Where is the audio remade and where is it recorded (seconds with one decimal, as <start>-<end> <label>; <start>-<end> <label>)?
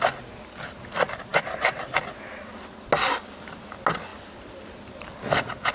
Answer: 0.0-5.7 recorded